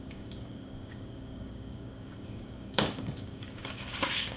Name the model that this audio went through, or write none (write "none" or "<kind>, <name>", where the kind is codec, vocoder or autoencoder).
codec, DAC